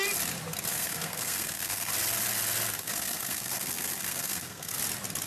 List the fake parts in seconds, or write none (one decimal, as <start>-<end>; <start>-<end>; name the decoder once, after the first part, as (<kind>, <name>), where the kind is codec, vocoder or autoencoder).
0.7-1.9 (codec, SNAC); 2.8-4.8